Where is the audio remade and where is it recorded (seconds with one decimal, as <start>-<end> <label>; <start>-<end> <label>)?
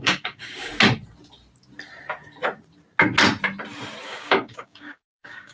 0.0-0.7 remade; 0.7-4.0 recorded; 4.0-5.5 remade